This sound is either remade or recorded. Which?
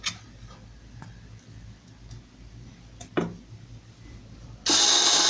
recorded